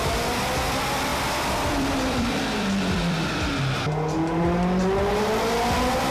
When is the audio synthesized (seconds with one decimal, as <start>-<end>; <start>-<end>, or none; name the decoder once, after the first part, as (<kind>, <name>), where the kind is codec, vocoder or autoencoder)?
1.1-3.5 (vocoder, BigVGAN v2)